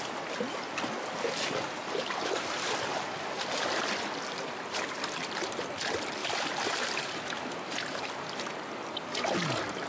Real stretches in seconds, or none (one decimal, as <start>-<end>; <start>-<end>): 0.0-9.9

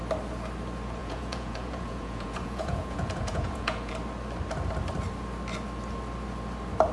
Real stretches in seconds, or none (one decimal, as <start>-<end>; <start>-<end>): 0.0-1.0; 3.9-6.9